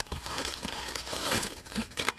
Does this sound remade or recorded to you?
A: remade